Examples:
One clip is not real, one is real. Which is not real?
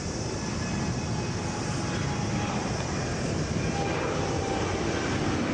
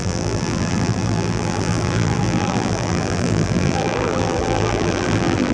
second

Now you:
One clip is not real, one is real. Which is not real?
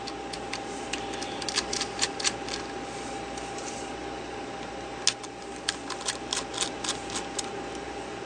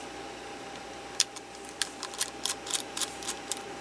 second